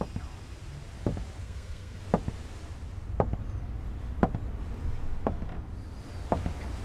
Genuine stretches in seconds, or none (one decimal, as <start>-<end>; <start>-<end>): 0.0-1.4; 2.0-6.8